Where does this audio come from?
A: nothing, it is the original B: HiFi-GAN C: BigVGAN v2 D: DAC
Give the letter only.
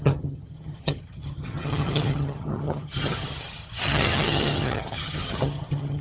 B